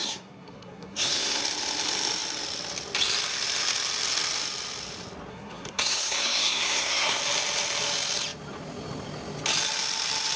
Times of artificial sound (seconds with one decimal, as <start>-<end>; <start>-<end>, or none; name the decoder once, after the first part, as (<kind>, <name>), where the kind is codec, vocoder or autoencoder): 0.0-1.4 (codec, SNAC); 5.3-7.2